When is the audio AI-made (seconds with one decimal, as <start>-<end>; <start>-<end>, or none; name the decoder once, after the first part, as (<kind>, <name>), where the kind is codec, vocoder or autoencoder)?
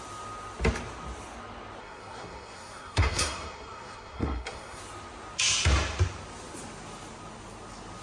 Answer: 1.8-4.8 (codec, SNAC)